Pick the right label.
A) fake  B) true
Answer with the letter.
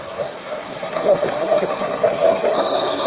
A